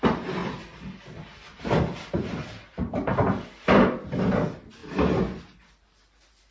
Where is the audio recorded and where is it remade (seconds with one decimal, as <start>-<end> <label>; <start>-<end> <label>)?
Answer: 0.0-0.4 recorded; 0.4-4.3 remade; 4.3-6.5 recorded